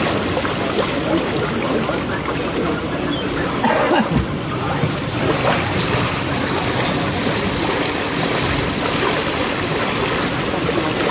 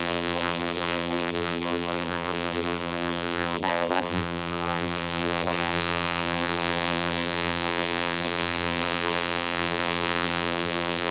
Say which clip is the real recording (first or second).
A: first